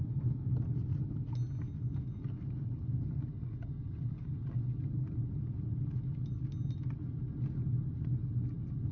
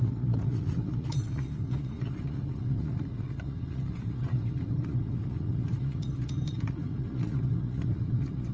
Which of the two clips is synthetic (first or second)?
second